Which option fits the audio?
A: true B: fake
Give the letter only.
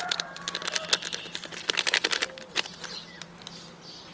A